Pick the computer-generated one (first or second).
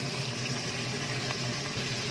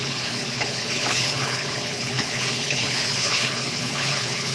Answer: second